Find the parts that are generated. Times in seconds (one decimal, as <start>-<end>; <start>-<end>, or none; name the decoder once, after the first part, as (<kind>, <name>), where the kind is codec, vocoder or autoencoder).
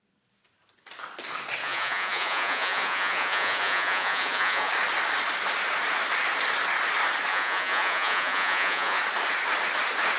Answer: 1.6-4.7 (vocoder, Vocos); 7.3-9.0